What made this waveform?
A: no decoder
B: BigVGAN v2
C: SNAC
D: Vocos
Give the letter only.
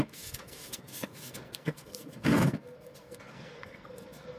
C